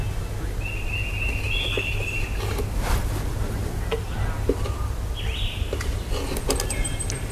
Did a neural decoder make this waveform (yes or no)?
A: no